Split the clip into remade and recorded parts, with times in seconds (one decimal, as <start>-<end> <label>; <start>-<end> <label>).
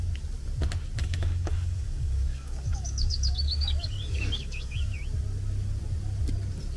0.0-1.0 recorded; 1.0-5.0 remade; 5.0-6.8 recorded